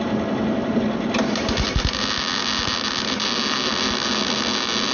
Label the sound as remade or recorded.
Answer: recorded